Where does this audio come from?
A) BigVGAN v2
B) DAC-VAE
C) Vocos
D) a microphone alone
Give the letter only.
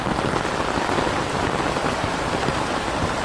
D